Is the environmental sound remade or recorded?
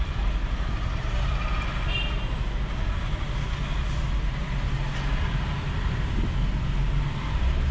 recorded